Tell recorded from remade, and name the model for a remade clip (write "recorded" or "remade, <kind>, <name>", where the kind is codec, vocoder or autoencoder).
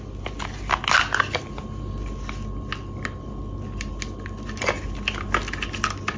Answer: recorded